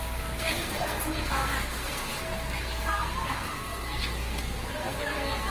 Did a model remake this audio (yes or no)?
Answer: yes